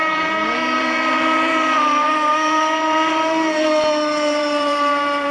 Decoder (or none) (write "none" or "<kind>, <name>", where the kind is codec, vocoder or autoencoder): vocoder, BigVGAN v2